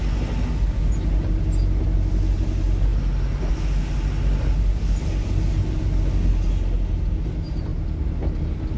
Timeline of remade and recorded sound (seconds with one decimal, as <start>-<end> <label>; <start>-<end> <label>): 0.0-8.8 recorded